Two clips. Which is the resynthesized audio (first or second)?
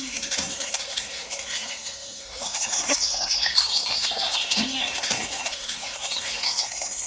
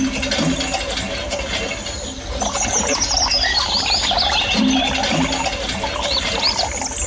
first